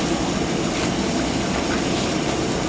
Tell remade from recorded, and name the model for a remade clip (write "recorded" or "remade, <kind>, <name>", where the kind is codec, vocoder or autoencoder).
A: recorded